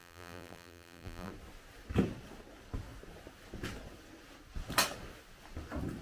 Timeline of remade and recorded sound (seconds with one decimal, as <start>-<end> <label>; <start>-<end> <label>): 0.0-1.3 remade; 1.3-6.0 recorded